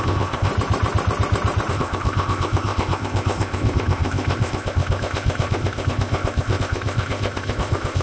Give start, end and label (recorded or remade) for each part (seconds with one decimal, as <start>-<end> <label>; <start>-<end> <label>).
0.0-0.5 remade; 0.5-1.7 recorded; 1.7-8.0 remade